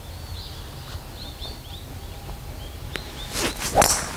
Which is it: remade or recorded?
recorded